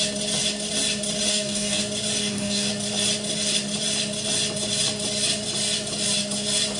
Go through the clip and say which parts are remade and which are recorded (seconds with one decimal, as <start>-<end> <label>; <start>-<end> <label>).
0.0-1.3 recorded; 1.3-1.8 remade; 1.8-2.2 recorded; 2.2-2.7 remade; 2.7-6.8 recorded